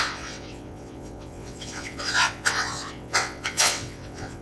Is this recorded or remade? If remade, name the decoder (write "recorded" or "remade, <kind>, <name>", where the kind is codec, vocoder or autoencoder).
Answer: remade, vocoder, WaveNeXt